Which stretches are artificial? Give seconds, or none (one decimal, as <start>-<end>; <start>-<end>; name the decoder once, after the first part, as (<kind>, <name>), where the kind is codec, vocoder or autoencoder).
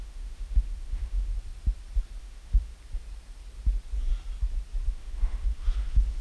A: 0.0-1.3 (autoencoder, DAC-VAE); 2.2-2.7; 4.9-6.2